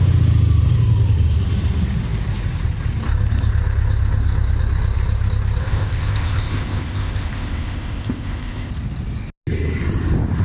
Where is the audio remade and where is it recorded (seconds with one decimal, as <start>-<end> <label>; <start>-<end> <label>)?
0.0-5.6 recorded; 5.6-8.7 remade; 8.7-10.4 recorded